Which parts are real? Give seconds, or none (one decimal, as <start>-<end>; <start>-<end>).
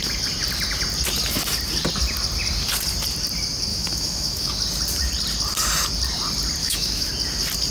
0.0-3.7; 4.5-6.6; 7.1-7.7